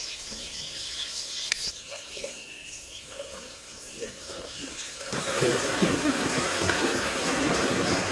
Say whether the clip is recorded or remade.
remade